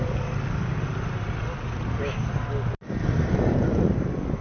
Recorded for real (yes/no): yes